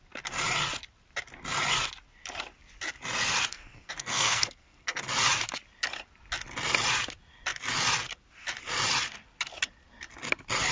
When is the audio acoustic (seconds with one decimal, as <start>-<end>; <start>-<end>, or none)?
0.0-3.5; 5.0-10.7